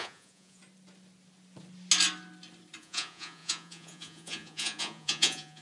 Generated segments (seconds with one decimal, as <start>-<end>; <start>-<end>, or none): 0.0-0.6; 2.8-5.6

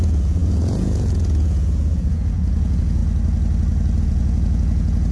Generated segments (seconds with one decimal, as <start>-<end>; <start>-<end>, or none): 0.0-3.0; 4.0-5.1

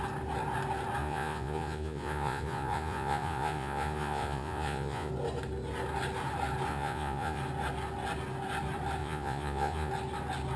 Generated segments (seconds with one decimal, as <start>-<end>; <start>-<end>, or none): 1.0-5.1; 6.7-7.4; 9.0-9.9

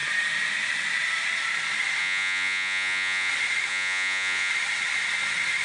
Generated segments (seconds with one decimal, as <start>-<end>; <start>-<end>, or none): 2.0-3.3; 3.7-4.5

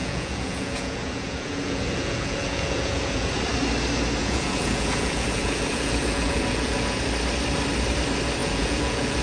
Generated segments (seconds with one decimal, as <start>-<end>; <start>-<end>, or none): 0.0-3.3; 4.2-7.0; 8.4-9.2

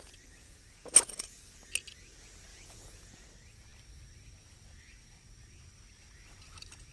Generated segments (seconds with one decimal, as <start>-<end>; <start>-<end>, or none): 0.4-1.4; 2.5-3.3